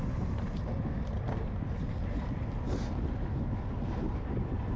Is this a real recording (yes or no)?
yes